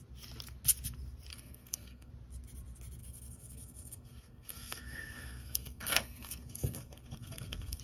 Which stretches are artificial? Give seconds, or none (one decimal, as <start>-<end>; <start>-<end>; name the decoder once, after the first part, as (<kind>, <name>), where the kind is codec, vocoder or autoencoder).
1.3-2.1 (codec, SNAC); 3.0-7.8